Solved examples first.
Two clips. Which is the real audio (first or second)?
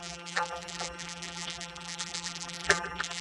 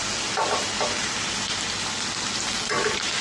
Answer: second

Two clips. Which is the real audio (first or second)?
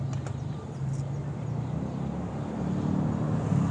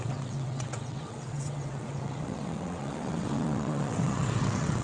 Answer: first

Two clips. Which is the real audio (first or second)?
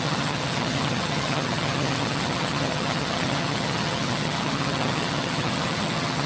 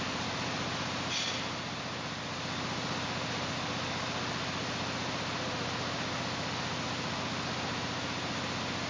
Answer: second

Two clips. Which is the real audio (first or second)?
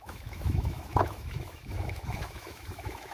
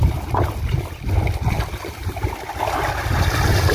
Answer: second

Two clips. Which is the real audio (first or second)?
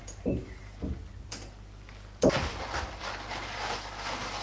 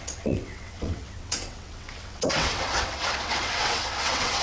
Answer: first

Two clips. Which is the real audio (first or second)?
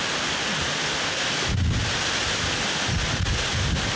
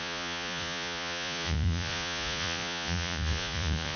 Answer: first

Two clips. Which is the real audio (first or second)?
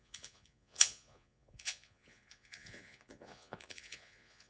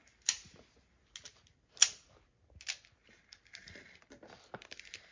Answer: second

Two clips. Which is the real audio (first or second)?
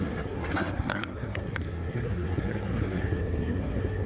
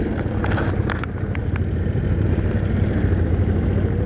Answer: second